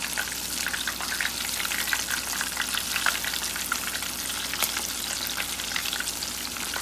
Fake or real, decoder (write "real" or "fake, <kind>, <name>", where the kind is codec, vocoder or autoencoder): real